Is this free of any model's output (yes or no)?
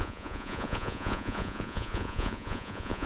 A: no